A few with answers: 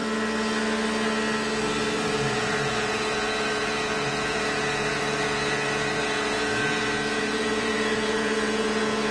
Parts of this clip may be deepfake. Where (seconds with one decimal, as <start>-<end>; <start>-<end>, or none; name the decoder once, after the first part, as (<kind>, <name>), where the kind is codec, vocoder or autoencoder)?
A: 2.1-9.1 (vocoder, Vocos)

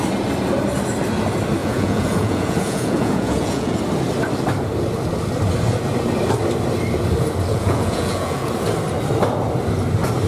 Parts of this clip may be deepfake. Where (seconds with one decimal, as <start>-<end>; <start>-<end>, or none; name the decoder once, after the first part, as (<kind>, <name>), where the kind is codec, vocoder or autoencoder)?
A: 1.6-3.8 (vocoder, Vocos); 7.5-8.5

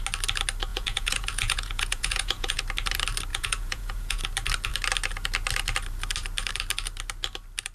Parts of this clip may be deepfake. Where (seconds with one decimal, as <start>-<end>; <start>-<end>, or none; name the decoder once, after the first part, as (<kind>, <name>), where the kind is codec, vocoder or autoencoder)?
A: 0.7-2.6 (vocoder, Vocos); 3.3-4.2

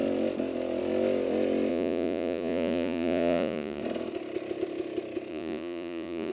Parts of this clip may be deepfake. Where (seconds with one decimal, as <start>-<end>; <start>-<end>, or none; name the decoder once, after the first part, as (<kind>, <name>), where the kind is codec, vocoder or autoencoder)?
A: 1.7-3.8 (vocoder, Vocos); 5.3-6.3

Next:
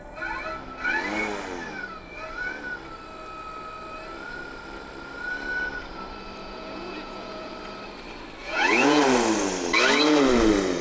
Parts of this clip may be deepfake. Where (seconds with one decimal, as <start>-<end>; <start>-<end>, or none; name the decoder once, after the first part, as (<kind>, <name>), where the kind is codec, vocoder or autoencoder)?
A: 6.4-7.5 (vocoder, Vocos); 8.4-9.0

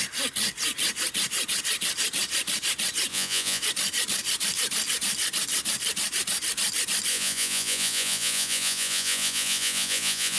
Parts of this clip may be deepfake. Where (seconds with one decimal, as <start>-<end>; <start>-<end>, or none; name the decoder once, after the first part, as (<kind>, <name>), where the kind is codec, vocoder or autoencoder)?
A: 3.1-3.6 (vocoder, Vocos); 7.1-10.4